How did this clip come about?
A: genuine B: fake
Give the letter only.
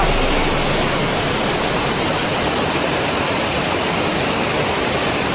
A